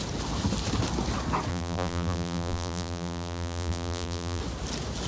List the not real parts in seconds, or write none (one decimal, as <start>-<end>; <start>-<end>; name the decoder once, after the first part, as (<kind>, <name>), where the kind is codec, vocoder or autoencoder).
1.5-4.4 (vocoder, BigVGAN v2)